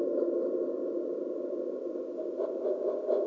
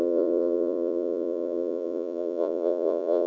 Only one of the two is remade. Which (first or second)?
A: second